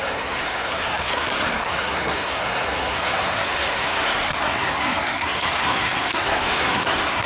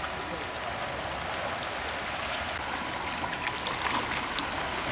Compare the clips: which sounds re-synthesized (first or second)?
first